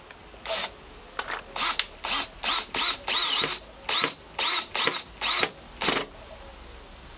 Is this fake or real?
real